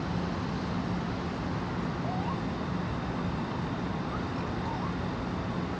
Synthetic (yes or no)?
no